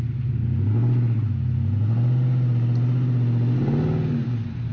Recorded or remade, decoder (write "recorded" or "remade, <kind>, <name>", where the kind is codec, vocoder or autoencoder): recorded